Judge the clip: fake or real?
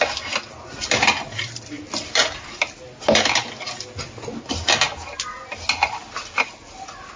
real